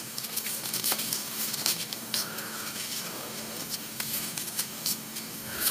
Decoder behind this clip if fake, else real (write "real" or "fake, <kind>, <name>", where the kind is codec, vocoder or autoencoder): fake, codec, DAC